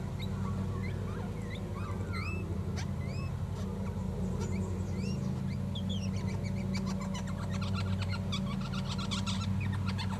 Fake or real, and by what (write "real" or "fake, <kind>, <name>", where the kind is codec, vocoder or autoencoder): real